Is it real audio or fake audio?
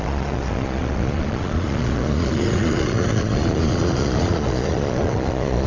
fake